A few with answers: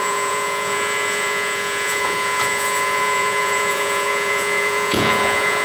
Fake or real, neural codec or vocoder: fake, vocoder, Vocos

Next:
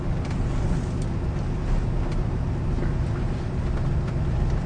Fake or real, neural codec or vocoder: real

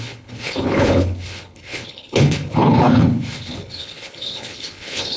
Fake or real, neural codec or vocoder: fake, codec, HILCodec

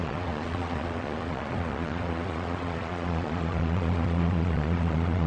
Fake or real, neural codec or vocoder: fake, vocoder, Vocos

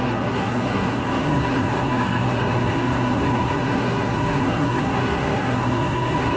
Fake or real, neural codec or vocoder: fake, codec, SNAC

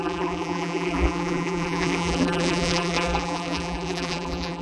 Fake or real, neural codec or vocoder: fake, vocoder, BigVGAN v2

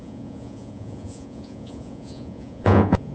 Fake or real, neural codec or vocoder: fake, vocoder, Vocos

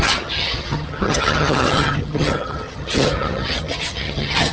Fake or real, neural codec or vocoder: fake, vocoder, HiFi-GAN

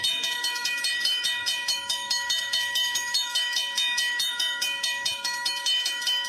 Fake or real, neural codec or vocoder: fake, autoencoder, DAC-VAE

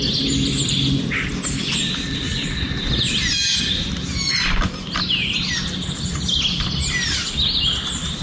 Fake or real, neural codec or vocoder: real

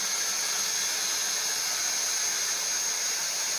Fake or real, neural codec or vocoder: real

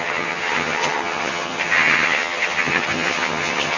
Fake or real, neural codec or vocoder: fake, vocoder, HiFi-GAN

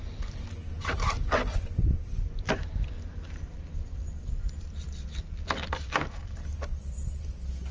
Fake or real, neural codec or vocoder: real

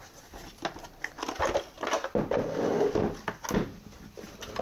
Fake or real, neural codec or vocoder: real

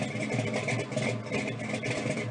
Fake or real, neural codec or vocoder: real